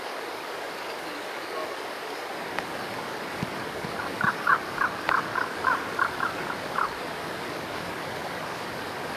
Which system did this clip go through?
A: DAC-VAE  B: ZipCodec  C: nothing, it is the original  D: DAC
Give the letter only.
D